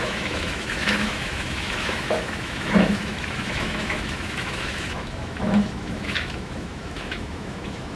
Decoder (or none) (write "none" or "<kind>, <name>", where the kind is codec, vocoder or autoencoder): autoencoder, DAC-VAE